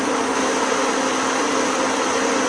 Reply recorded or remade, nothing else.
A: recorded